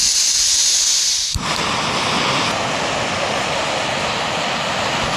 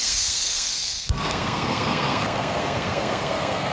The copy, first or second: second